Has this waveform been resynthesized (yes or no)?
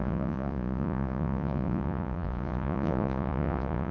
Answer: yes